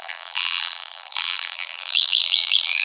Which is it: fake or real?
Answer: fake